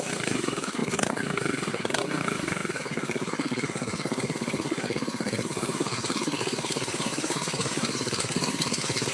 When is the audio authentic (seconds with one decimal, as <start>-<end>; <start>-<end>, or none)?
none